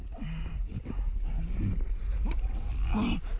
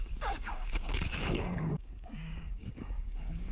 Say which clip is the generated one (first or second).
second